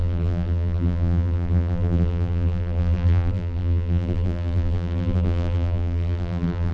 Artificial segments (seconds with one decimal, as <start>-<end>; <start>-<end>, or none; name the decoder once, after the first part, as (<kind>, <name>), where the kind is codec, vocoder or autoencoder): 0.0-6.7 (vocoder, BigVGAN v2)